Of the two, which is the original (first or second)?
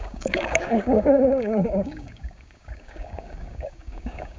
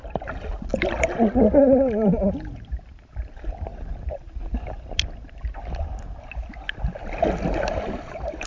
second